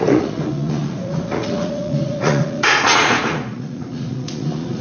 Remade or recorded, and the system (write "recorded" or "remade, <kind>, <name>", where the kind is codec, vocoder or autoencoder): remade, vocoder, Vocos